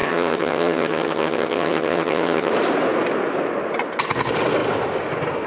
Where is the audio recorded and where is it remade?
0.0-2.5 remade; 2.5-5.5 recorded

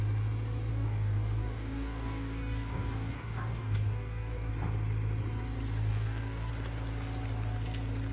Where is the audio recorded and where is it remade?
0.0-0.7 recorded; 0.7-4.5 remade; 4.5-5.9 recorded; 5.9-6.5 remade; 6.5-8.1 recorded

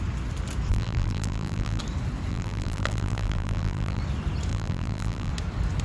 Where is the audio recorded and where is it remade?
0.0-0.7 recorded; 0.7-1.8 remade; 1.8-2.3 recorded; 2.3-4.0 remade; 4.0-4.5 recorded; 4.5-5.3 remade; 5.3-5.8 recorded

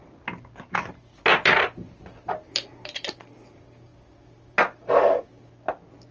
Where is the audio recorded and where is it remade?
0.0-6.1 recorded

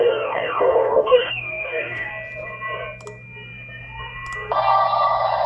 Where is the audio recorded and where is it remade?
0.0-2.1 remade; 2.1-5.5 recorded